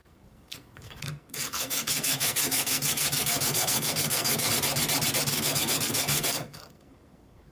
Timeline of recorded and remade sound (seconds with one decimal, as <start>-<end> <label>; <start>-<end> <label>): 0.0-4.5 remade; 4.5-5.3 recorded; 5.3-7.5 remade